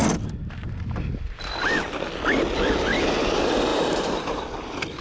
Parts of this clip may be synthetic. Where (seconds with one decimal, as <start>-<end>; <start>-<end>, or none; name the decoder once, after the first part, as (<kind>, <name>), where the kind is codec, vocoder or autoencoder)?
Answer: 3.7-4.4 (vocoder, BigVGAN v2)